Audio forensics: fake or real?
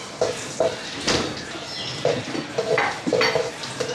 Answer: real